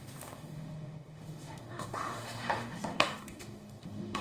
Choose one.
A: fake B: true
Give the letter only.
A